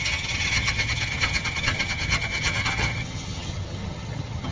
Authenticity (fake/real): fake